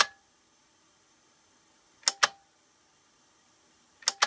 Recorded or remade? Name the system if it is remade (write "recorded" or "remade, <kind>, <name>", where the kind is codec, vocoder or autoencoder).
recorded